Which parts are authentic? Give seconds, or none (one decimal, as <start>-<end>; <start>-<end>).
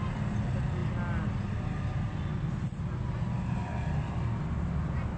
0.0-5.2